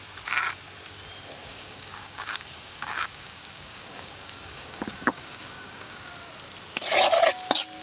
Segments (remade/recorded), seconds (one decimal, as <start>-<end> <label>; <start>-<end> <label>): 0.0-1.4 recorded; 1.4-6.1 remade; 6.1-7.8 recorded